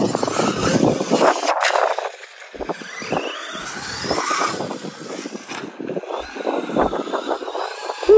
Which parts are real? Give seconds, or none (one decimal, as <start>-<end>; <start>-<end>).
0.0-8.2